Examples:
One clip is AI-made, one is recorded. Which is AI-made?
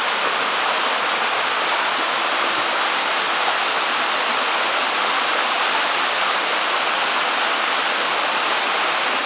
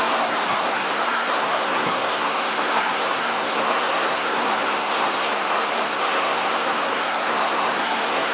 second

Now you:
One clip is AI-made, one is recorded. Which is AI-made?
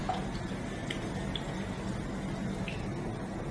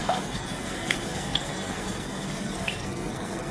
second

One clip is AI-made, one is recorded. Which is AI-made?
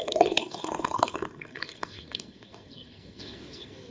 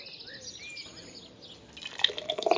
first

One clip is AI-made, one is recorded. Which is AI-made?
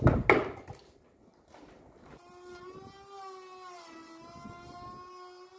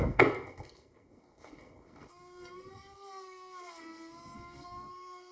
second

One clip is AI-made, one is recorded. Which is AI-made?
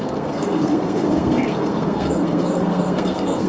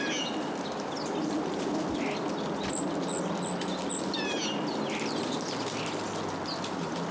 first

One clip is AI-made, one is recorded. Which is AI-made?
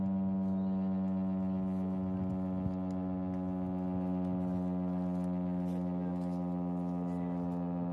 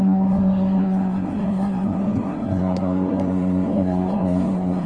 second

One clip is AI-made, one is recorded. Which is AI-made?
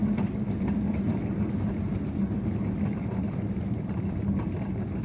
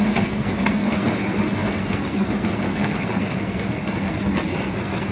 second